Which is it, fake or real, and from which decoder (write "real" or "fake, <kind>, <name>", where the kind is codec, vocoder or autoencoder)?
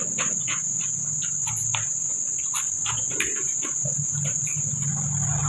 real